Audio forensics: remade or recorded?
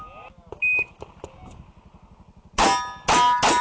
recorded